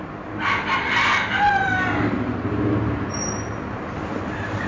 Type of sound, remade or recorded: recorded